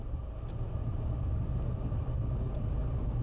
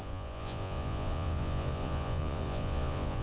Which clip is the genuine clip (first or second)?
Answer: first